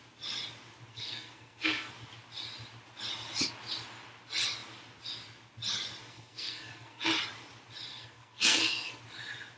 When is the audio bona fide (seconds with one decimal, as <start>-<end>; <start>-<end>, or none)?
0.0-0.9; 1.9-6.0; 7.1-7.9; 9.0-9.6